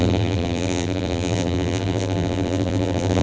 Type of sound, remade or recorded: remade